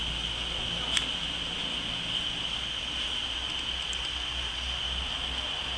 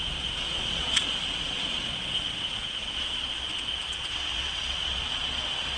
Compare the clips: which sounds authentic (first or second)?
first